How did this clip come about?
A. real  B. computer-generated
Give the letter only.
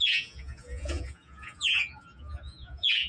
B